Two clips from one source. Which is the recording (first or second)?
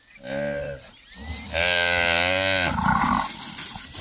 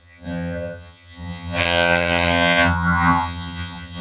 first